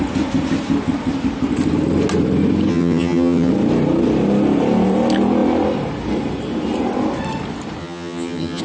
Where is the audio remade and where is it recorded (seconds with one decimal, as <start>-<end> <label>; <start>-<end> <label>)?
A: 0.0-2.7 recorded; 2.7-3.5 remade; 3.5-7.8 recorded; 7.8-8.6 remade